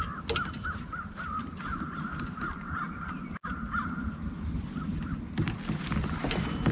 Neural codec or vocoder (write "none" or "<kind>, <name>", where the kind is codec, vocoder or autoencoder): none